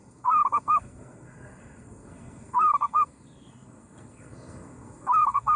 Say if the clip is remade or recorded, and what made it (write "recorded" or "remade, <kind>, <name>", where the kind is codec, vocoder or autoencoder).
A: remade, codec, SNAC